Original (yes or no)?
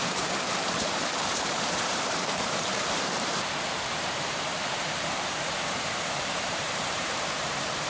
no